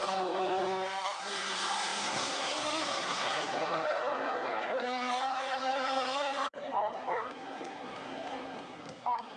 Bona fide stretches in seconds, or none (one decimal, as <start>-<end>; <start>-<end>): none